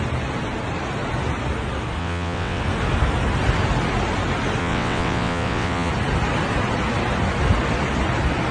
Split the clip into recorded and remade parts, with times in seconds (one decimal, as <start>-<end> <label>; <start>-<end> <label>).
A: 0.0-2.0 recorded; 2.0-2.6 remade; 2.6-4.6 recorded; 4.6-5.9 remade; 5.9-8.5 recorded